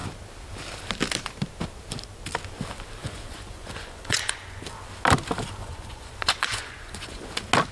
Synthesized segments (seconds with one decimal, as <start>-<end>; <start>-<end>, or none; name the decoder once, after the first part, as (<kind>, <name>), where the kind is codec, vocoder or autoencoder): 3.0-4.6 (vocoder, Vocos); 5.6-7.3